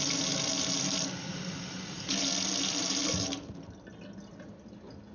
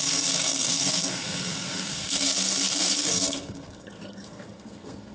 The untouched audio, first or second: first